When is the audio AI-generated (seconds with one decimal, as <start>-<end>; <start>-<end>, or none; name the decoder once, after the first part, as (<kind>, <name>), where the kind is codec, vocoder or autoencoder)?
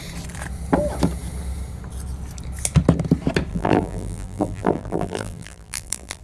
3.5-6.2 (vocoder, BigVGAN v2)